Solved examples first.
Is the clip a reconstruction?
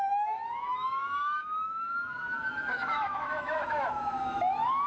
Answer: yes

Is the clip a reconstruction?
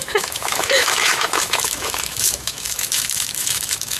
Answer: yes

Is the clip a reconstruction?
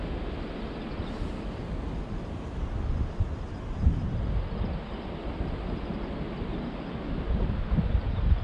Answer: no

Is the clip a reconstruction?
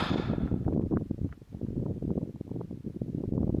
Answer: no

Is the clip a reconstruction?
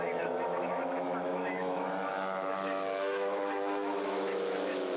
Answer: yes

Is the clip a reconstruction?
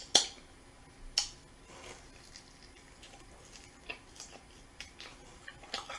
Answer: no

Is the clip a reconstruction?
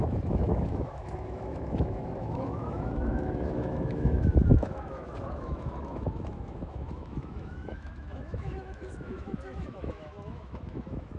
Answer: yes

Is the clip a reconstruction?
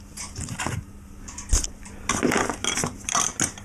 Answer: no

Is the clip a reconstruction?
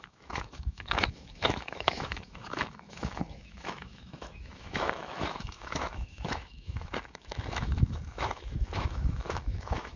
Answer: yes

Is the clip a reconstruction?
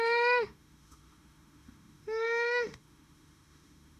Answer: yes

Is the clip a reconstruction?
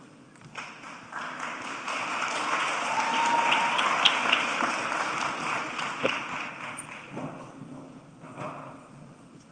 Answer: no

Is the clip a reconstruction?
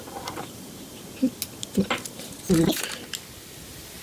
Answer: no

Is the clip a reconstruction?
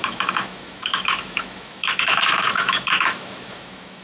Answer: yes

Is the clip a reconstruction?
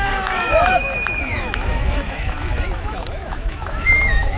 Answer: yes